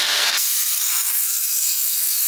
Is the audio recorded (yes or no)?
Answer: no